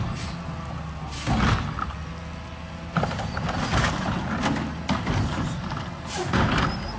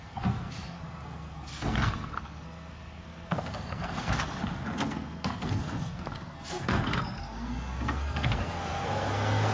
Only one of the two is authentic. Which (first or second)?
first